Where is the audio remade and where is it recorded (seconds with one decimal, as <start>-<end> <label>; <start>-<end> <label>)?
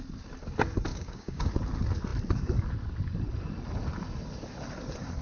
0.0-0.9 recorded; 0.9-1.5 remade; 1.5-5.2 recorded